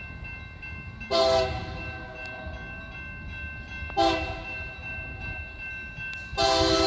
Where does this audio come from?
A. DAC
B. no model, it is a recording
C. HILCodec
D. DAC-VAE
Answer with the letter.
B